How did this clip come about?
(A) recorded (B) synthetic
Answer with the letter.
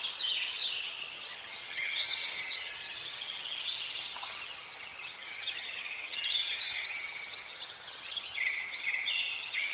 B